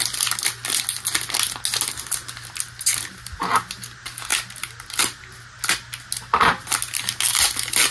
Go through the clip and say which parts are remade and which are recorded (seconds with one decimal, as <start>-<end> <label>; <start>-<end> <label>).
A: 0.0-7.9 recorded